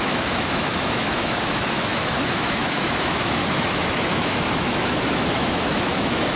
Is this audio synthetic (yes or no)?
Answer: yes